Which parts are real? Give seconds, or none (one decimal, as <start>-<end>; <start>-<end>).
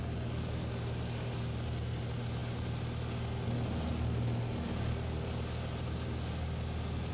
0.0-7.1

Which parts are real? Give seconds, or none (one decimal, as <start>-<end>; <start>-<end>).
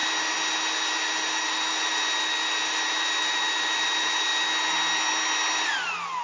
0.0-6.2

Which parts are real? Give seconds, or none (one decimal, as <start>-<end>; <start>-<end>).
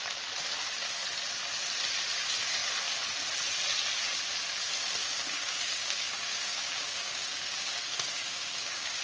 0.0-5.0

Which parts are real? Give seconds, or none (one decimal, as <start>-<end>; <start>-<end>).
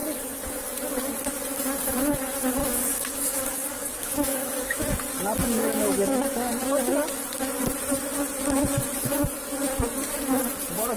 0.0-2.6; 4.8-5.4; 6.5-11.0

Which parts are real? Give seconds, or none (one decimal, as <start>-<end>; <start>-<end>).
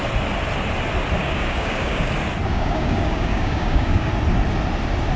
0.0-1.2; 2.1-2.5; 4.1-5.2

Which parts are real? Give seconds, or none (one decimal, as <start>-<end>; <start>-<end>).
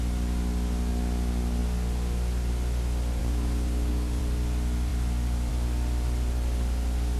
0.0-3.2; 4.2-7.2